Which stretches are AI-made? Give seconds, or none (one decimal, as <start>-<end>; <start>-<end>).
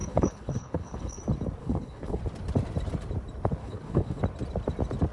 0.0-1.2; 1.6-2.2; 3.6-4.2